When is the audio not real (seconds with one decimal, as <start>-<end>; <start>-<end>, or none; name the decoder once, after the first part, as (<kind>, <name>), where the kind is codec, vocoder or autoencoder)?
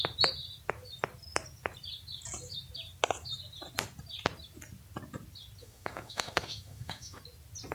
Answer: 5.6-7.2 (autoencoder, DAC-VAE)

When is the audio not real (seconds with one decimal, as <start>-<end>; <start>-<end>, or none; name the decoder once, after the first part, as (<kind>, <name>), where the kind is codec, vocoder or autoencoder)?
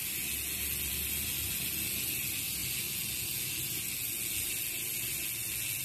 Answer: none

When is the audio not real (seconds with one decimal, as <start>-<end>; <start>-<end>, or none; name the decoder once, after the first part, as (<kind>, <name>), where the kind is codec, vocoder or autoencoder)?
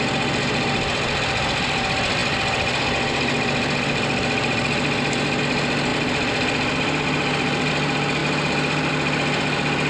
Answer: none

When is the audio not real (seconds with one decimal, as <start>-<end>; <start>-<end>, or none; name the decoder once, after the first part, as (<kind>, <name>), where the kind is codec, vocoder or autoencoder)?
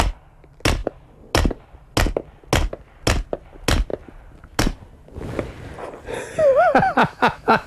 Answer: 7.0-7.7 (autoencoder, DAC-VAE)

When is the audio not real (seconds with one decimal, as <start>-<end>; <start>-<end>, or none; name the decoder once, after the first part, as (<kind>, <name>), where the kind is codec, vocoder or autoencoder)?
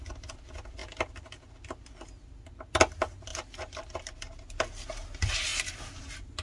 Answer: none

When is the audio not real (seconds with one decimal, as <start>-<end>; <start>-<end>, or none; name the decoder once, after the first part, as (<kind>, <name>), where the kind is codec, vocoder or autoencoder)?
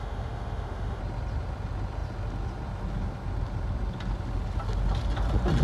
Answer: 0.0-1.0 (autoencoder, DAC-VAE)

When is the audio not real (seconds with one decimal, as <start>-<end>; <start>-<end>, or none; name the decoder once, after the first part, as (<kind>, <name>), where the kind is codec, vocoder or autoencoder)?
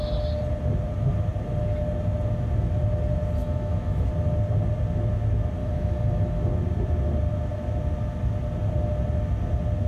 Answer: 3.4-4.1 (autoencoder, DAC-VAE); 5.6-6.5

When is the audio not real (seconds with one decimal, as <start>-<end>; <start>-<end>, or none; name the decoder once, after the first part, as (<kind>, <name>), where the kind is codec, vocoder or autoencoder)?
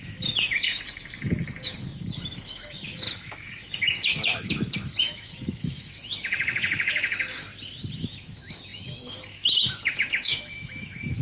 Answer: 0.0-7.5 (autoencoder, DAC-VAE); 8.0-11.2